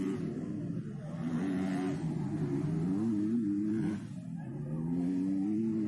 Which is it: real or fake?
real